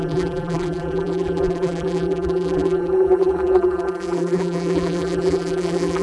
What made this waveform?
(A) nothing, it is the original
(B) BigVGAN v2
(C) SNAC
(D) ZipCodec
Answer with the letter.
B